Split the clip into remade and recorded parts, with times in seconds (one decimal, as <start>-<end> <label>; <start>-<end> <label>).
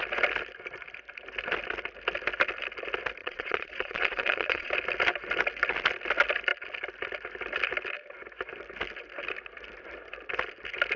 0.0-3.2 recorded; 3.2-4.7 remade; 4.7-11.0 recorded